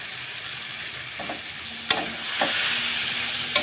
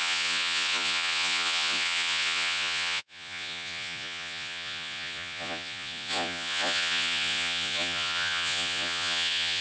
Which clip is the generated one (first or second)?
second